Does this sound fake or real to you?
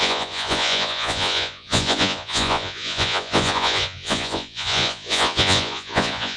fake